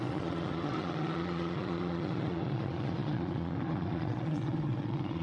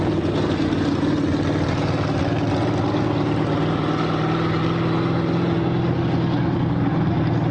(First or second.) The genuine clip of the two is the second